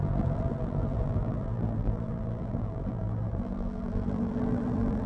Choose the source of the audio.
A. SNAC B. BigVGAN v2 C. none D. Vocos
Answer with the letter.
B